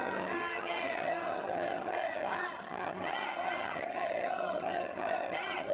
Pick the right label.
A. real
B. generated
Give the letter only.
B